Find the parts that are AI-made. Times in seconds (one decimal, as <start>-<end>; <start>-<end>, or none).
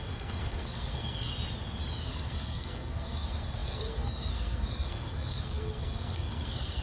0.0-1.3; 2.1-6.8